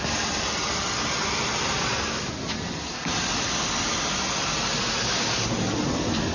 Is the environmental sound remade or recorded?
recorded